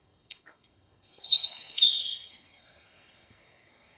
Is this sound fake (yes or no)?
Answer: yes